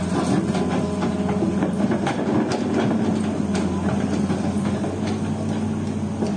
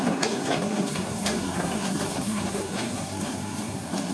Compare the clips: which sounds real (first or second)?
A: first